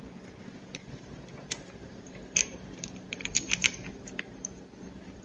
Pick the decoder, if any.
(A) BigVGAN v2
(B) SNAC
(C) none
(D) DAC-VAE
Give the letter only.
A